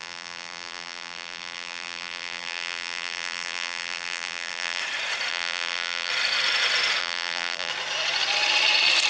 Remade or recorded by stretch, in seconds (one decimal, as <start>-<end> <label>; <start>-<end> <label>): 0.0-4.8 remade; 4.8-5.3 recorded; 5.3-6.1 remade; 6.1-7.0 recorded; 7.0-7.7 remade; 7.7-9.1 recorded

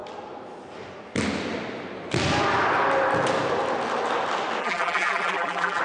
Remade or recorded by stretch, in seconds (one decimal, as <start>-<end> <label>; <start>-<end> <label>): 0.0-4.6 recorded; 4.6-5.8 remade

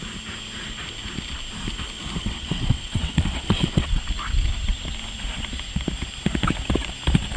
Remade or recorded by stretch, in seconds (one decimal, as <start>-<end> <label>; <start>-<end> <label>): 0.0-2.2 recorded; 2.2-4.0 remade; 4.0-7.4 recorded

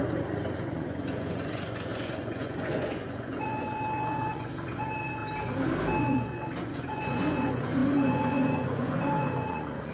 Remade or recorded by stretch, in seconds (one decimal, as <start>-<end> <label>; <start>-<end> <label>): 0.0-5.2 remade; 5.2-6.0 recorded; 6.0-9.9 remade

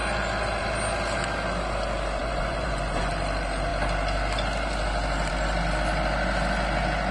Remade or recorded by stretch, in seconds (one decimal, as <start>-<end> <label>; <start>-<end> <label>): 0.0-2.2 recorded; 2.2-3.1 remade; 3.1-7.1 recorded

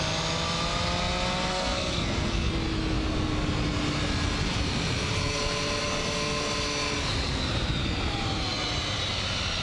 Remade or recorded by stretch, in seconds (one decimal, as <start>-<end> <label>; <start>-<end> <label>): 0.0-1.5 recorded; 1.5-2.5 remade; 2.5-9.6 recorded